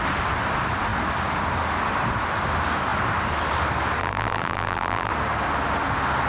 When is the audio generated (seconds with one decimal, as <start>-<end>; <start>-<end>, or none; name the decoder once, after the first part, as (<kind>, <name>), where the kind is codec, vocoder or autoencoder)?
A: 4.0-5.1 (vocoder, BigVGAN v2)